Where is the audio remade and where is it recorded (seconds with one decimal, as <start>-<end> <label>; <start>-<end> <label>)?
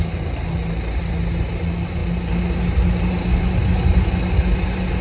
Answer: 0.0-5.0 recorded